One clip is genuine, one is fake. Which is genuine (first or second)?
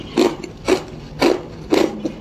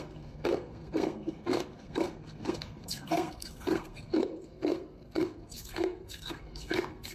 first